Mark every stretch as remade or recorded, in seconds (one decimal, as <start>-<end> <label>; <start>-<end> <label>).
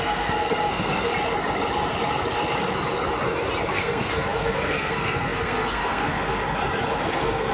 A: 0.0-1.1 remade; 1.1-3.7 recorded; 3.7-6.4 remade; 6.4-7.0 recorded; 7.0-7.5 remade